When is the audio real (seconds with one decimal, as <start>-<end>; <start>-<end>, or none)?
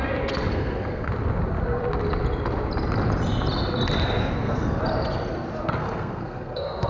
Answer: 0.0-0.5; 1.1-4.2; 4.8-5.8